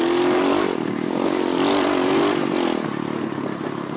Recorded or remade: recorded